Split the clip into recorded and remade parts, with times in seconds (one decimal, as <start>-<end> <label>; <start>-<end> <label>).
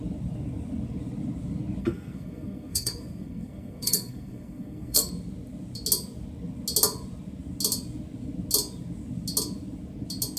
0.0-1.8 recorded; 1.8-5.1 remade; 5.1-10.4 recorded